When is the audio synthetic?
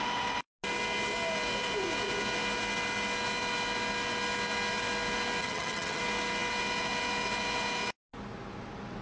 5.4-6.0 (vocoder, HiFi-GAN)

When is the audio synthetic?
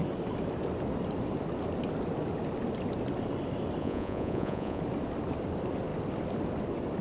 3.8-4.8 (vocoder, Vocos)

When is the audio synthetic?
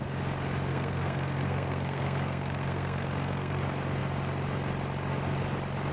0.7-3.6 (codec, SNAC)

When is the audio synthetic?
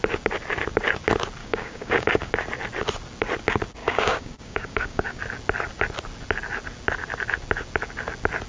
1.4-2.3 (codec, DAC); 3.8-5.2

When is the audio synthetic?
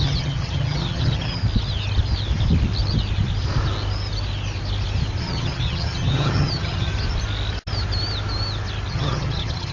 0.0-1.4 (vocoder, HiFi-GAN); 5.2-6.9; 8.9-9.7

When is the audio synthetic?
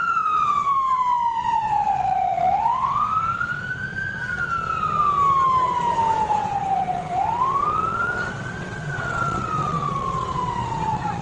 0.0-0.7 (vocoder, WaveNeXt); 1.7-3.1; 6.3-11.2